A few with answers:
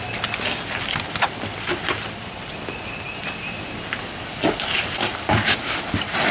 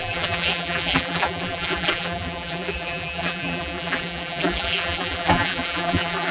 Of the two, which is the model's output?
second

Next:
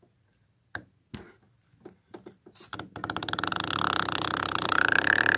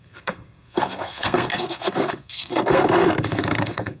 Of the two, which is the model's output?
second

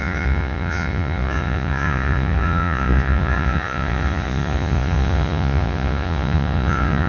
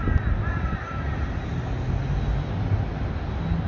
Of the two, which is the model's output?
first